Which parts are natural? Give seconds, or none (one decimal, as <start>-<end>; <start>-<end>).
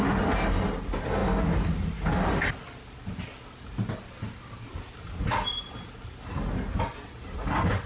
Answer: 0.0-7.9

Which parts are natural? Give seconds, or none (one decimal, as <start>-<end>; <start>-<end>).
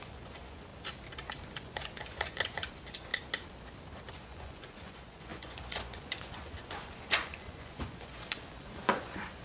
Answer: 0.7-1.3; 3.1-4.1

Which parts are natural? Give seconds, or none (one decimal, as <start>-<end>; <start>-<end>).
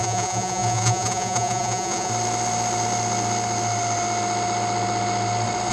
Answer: 2.1-5.7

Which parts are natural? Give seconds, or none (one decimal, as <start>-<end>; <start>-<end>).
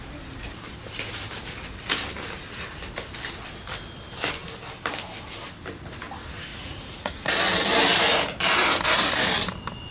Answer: 0.0-6.5; 7.2-9.9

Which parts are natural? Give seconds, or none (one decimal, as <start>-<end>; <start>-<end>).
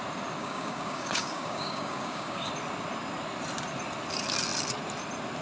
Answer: 0.0-0.4; 2.5-5.4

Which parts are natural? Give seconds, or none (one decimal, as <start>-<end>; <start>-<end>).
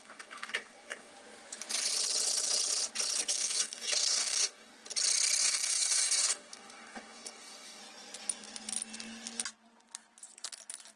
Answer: 1.1-3.3; 4.7-5.4; 7.8-11.0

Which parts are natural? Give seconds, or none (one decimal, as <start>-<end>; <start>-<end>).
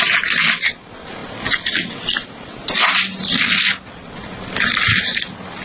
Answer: 0.0-5.6